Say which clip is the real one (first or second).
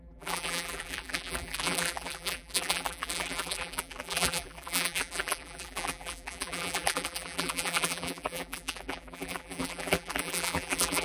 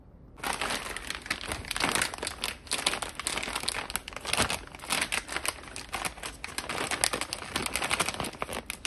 second